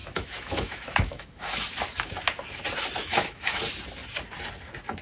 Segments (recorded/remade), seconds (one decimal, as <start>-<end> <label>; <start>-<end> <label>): 0.0-1.5 remade; 1.5-3.0 recorded; 3.0-3.6 remade; 3.6-5.0 recorded